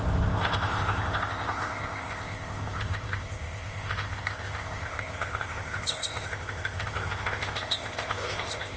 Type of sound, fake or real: fake